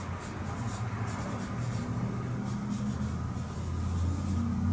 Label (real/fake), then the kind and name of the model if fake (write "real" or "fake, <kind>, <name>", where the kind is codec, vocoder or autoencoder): real